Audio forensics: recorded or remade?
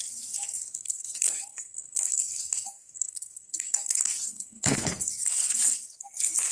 remade